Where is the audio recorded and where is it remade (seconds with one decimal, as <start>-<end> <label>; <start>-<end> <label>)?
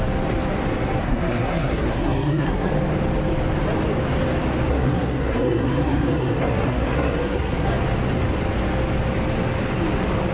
0.0-1.0 recorded; 1.0-2.7 remade; 2.7-4.7 recorded; 4.7-7.7 remade; 7.7-10.3 recorded